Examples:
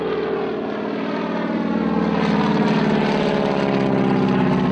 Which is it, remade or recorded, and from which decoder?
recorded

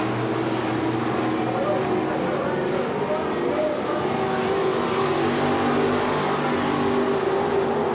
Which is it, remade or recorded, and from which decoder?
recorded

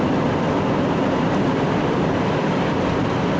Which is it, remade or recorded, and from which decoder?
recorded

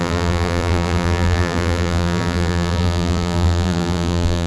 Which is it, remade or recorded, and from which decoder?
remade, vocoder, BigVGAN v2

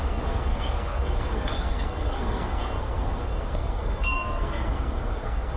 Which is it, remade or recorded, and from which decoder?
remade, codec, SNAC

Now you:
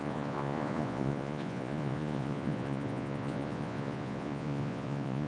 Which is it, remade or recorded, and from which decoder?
remade, vocoder, Vocos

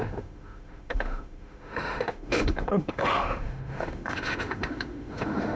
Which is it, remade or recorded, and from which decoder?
remade, autoencoder, DAC-VAE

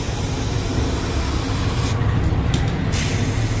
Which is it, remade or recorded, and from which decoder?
recorded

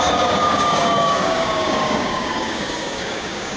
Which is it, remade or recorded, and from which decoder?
remade, codec, DAC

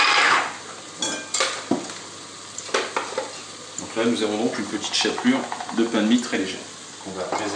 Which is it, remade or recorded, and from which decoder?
recorded